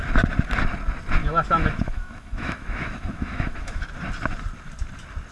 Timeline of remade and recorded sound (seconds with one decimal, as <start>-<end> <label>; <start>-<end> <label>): 0.0-1.2 recorded; 1.2-3.9 remade; 3.9-5.3 recorded